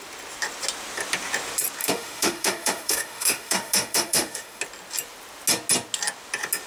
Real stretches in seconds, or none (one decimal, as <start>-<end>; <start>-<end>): 0.0-1.8; 4.6-6.7